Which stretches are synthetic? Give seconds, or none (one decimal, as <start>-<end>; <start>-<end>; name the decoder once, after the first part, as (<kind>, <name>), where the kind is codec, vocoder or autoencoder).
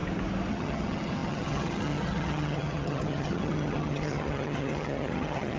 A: 0.5-5.6 (vocoder, HiFi-GAN)